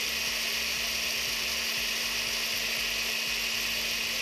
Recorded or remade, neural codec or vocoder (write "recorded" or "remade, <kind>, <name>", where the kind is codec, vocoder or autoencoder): recorded